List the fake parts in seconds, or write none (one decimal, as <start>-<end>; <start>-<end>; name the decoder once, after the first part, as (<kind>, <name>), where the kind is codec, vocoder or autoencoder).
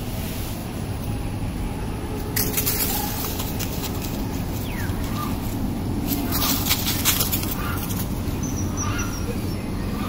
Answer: 0.6-1.2 (vocoder, BigVGAN v2)